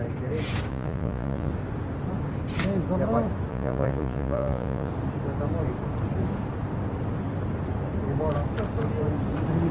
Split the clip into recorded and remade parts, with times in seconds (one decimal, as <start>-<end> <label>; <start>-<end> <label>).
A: 0.0-0.7 recorded; 0.7-1.5 remade; 1.5-3.5 recorded; 3.5-4.9 remade; 4.9-9.7 recorded